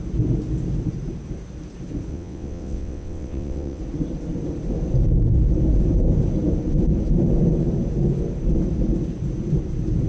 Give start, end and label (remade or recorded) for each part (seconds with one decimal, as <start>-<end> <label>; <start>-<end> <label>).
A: 0.0-2.1 recorded; 2.1-3.8 remade; 3.8-10.1 recorded